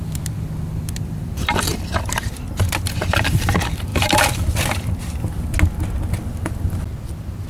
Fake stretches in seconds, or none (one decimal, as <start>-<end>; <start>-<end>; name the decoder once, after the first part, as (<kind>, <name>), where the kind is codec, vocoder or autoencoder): 0.0-3.9 (vocoder, BigVGAN v2); 6.3-7.5